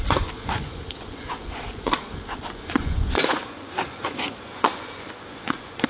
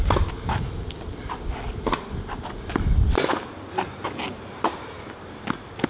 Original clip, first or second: second